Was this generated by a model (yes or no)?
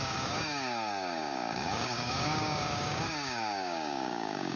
yes